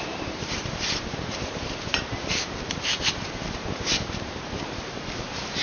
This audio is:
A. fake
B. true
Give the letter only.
A